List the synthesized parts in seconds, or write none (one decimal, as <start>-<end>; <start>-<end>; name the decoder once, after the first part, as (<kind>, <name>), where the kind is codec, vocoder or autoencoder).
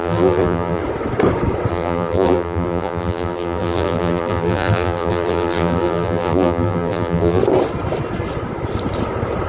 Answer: 0.0-0.8 (vocoder, BigVGAN v2); 1.7-7.4